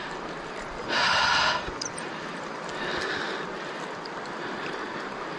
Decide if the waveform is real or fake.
real